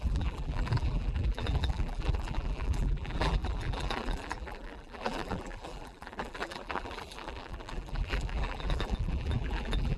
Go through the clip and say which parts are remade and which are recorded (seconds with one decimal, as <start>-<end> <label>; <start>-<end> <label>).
0.0-10.0 remade